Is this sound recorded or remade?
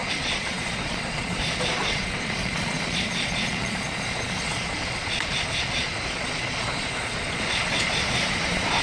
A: remade